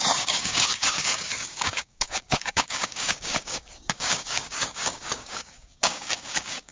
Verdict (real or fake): fake